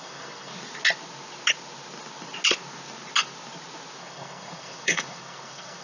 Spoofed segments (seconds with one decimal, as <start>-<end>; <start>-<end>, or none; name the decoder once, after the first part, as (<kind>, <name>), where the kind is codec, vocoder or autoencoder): 0.0-0.5 (codec, SNAC); 4.0-5.8